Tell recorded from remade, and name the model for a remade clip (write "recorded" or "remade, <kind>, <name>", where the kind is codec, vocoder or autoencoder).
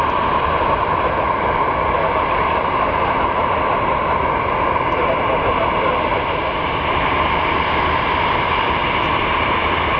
recorded